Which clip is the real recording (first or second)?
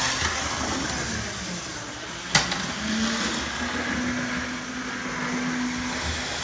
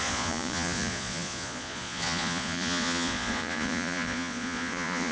first